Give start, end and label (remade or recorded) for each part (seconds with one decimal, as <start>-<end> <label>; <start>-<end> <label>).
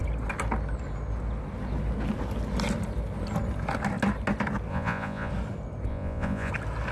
0.0-4.7 recorded; 4.7-5.3 remade; 5.3-5.9 recorded; 5.9-6.5 remade; 6.5-6.9 recorded